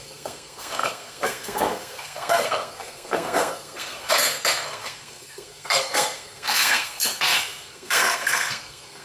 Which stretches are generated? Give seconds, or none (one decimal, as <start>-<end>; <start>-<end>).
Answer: 0.0-9.0